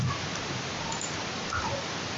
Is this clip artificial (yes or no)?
no